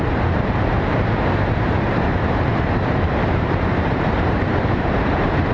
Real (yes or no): no